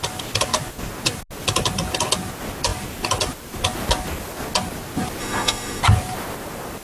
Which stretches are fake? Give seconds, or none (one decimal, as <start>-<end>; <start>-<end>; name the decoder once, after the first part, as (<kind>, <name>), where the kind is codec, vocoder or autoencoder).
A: 5.2-5.8 (autoencoder, DAC-VAE)